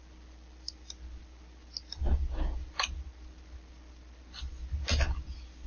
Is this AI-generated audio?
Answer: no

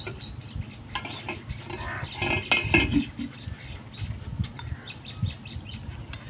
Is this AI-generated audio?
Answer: no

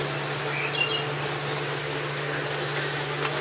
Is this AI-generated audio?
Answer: no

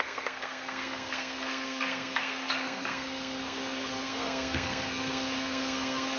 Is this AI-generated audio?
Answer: yes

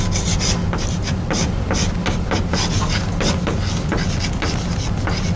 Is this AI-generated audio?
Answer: no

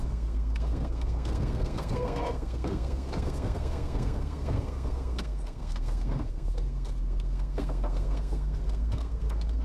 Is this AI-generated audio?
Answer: yes